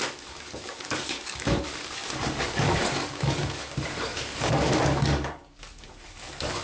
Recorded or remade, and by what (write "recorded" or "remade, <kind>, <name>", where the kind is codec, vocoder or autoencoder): remade, codec, DAC